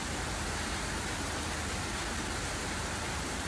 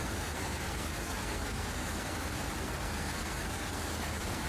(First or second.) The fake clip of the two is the second